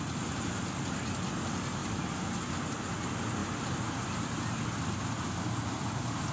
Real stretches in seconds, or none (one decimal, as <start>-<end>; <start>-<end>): 0.0-1.8; 2.4-3.4; 5.6-6.3